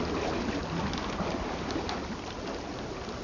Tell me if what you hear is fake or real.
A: real